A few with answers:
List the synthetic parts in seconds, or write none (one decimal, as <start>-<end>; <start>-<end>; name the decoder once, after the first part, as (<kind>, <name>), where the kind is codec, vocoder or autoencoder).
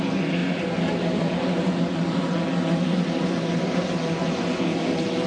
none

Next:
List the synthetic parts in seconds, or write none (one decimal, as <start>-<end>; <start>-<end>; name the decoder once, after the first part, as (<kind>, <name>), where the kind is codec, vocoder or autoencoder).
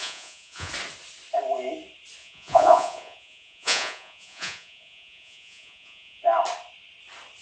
0.0-0.7 (vocoder, Vocos); 2.2-6.2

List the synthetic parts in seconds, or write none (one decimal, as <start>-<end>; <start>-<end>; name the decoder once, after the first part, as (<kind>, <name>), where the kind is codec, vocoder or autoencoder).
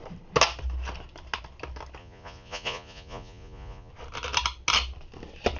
2.0-3.9 (vocoder, Vocos)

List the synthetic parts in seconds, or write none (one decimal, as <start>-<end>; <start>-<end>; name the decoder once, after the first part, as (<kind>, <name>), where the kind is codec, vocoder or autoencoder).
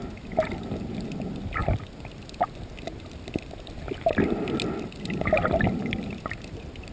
none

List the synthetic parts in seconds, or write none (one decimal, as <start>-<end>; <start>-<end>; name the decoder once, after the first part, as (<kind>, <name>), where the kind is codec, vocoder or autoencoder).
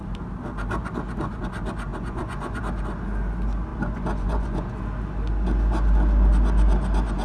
1.9-2.6 (vocoder, Vocos); 3.7-4.8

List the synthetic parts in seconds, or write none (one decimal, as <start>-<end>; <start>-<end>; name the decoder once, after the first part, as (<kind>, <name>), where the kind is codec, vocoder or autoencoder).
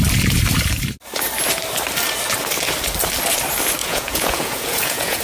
3.8-5.2 (vocoder, Vocos)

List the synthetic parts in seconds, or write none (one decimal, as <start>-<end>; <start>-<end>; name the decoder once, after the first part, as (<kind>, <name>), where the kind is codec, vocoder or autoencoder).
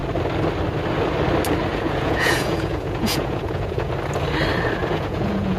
1.7-3.9 (vocoder, Vocos); 4.8-5.6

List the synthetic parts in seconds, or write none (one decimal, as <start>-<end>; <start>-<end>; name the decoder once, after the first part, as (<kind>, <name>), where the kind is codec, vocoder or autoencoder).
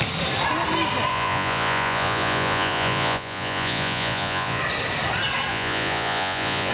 1.1-4.6 (vocoder, Vocos); 5.5-6.7